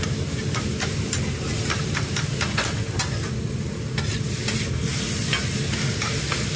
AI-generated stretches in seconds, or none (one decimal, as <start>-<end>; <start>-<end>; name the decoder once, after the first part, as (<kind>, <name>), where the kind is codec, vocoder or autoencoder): none